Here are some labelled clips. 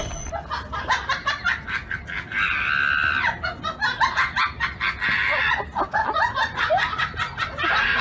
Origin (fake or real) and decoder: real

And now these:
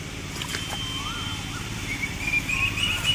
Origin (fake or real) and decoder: real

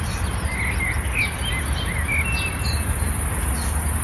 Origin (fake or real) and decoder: real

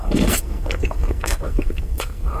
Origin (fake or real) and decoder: fake, codec, SNAC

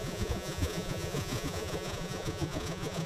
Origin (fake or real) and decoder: fake, vocoder, Vocos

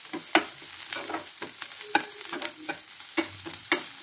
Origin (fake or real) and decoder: real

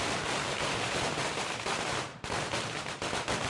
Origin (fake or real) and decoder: fake, vocoder, BigVGAN v2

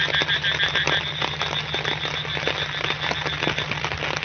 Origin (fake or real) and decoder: real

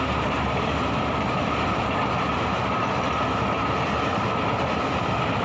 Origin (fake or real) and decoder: real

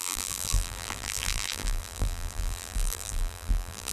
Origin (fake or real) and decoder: fake, vocoder, BigVGAN v2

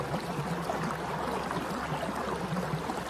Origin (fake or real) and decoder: real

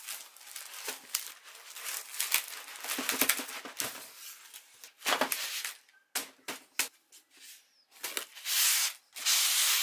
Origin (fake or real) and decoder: real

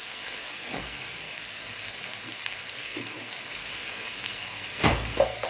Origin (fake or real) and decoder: fake, codec, SNAC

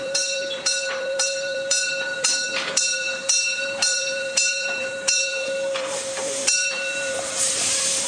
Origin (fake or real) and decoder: fake, vocoder, BigVGAN v2